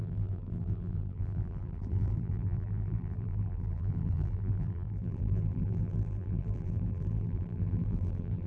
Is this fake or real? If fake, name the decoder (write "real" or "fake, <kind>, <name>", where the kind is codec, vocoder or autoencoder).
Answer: fake, vocoder, BigVGAN v2